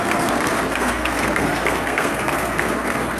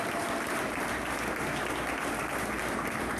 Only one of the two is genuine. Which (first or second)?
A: second